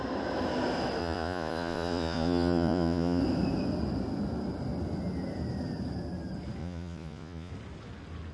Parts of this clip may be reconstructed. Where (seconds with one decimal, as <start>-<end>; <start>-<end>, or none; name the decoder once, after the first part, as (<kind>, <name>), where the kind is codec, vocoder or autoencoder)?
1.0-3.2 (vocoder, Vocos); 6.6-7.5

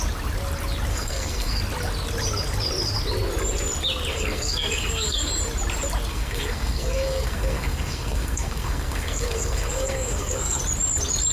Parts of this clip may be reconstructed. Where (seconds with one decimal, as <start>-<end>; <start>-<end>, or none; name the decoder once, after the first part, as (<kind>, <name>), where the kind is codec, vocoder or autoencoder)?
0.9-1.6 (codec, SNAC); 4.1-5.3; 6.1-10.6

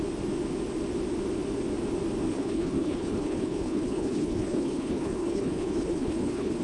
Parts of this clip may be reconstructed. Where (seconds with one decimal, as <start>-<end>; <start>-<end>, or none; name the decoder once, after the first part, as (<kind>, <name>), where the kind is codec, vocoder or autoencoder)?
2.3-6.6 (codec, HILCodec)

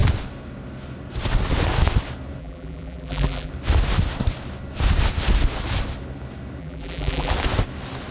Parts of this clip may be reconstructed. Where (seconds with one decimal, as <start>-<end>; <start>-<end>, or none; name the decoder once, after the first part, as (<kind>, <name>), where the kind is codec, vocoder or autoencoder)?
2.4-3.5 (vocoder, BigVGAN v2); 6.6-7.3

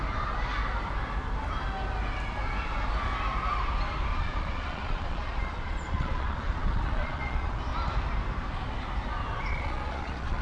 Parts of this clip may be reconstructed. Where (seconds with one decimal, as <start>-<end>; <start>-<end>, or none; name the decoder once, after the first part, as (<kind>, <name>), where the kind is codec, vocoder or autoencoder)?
4.1-7.6 (vocoder, Vocos); 9.5-10.4

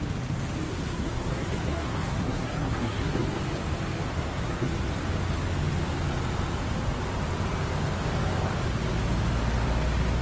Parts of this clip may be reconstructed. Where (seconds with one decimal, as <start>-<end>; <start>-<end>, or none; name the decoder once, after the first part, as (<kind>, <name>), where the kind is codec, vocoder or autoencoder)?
0.7-3.4 (codec, SNAC); 4.1-4.7

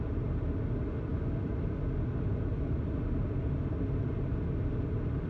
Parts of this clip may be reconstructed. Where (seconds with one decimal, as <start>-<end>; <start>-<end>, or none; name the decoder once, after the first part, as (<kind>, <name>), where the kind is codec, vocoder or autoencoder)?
none

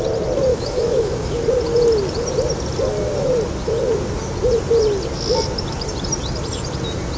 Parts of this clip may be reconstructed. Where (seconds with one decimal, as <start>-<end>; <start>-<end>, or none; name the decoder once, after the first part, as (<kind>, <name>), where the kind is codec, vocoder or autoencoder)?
0.5-1.4 (autoencoder, DAC-VAE)